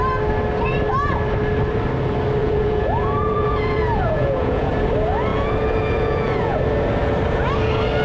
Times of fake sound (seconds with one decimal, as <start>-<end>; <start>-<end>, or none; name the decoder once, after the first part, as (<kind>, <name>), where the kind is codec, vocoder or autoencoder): 2.4-4.7 (vocoder, Vocos); 5.3-6.6